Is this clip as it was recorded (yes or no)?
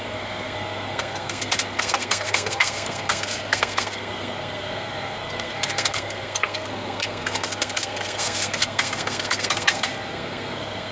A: no